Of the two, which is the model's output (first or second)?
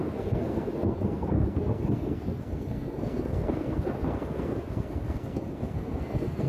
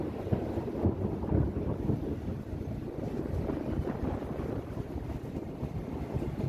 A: first